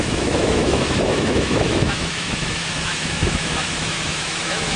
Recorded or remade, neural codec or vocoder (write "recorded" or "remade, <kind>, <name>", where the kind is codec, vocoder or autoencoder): remade, autoencoder, DAC-VAE